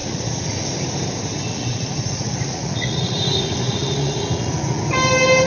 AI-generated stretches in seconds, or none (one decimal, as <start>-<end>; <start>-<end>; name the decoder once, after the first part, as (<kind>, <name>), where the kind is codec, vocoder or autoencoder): 0.0-0.7 (vocoder, Vocos); 1.5-4.8